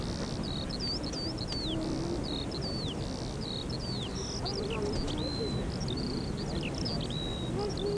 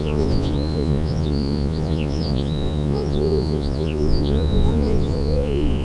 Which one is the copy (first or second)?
second